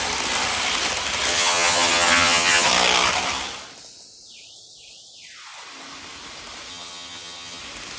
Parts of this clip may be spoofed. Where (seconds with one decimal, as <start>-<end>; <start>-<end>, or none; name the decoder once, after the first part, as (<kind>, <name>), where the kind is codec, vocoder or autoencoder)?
1.3-2.7 (vocoder, HiFi-GAN); 6.7-7.6